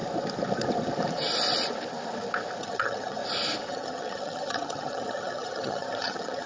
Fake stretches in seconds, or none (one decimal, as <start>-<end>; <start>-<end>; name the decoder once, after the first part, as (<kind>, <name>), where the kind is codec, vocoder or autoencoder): 2.6-3.2 (vocoder, HiFi-GAN); 3.7-6.5